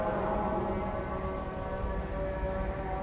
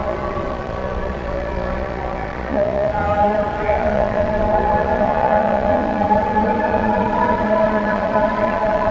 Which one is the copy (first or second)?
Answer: second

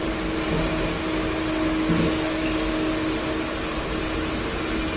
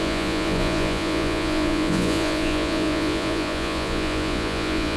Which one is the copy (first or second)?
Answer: second